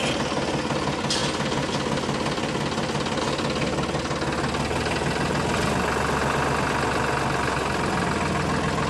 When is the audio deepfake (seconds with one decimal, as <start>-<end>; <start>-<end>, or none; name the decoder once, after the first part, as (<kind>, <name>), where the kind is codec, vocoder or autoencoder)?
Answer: 6.2-6.7 (vocoder, BigVGAN v2)